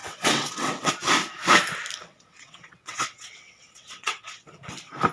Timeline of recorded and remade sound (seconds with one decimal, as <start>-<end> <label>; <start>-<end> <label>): 0.0-0.9 remade; 0.9-2.0 recorded; 2.0-4.5 remade; 4.5-5.1 recorded

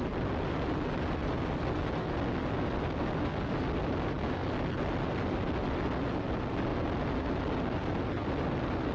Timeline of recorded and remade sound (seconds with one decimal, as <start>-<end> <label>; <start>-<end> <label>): 0.0-8.9 recorded